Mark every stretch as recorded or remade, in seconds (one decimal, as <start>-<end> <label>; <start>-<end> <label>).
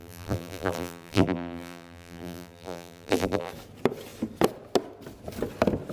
0.0-3.5 remade; 3.5-5.9 recorded